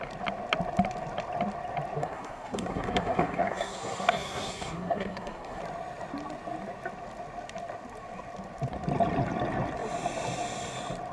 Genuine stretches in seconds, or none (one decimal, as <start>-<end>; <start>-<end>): 0.0-2.0; 5.6-11.1